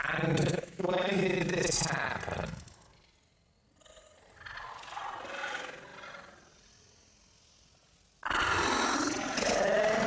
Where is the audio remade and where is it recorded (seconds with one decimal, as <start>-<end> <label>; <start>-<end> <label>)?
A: 0.0-0.4 recorded; 0.4-1.4 remade; 1.4-10.1 recorded